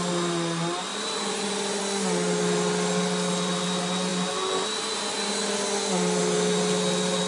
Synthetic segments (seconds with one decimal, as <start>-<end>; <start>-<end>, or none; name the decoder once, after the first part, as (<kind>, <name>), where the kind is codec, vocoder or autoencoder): 0.9-1.8 (vocoder, BigVGAN v2)